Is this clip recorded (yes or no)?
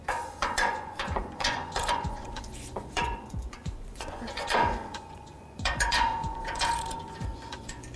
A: no